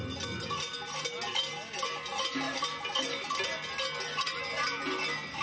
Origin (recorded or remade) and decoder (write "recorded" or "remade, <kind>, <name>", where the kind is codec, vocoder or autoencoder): recorded